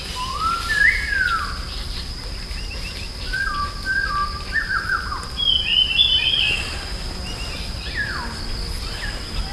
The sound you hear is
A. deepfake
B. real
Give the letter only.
B